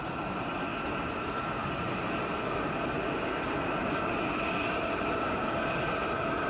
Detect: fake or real real